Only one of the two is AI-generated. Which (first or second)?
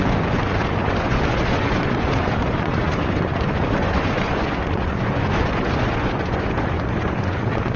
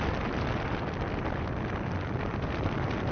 first